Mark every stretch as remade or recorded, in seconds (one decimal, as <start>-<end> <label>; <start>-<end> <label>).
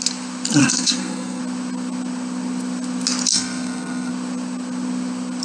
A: 0.0-0.6 recorded; 0.6-1.4 remade; 1.4-3.3 recorded; 3.3-4.1 remade; 4.1-5.4 recorded